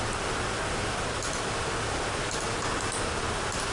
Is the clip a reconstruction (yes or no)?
no